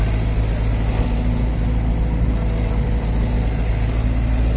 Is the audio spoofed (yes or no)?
no